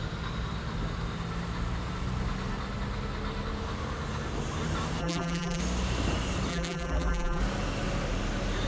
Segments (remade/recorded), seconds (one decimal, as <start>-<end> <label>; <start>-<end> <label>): 0.0-5.0 recorded; 5.0-5.6 remade; 5.6-6.5 recorded; 6.5-7.4 remade; 7.4-8.7 recorded